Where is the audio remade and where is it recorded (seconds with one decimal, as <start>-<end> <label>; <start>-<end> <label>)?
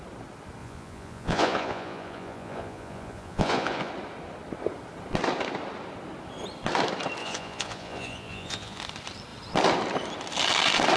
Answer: 0.0-0.6 recorded; 0.6-3.9 remade; 3.9-7.2 recorded; 7.2-8.8 remade; 8.8-11.0 recorded